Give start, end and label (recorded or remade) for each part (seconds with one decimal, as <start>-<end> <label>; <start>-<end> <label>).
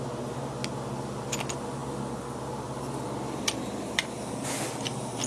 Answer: 0.0-5.3 recorded